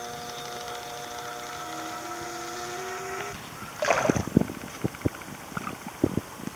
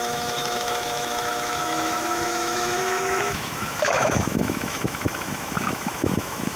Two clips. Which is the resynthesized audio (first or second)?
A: second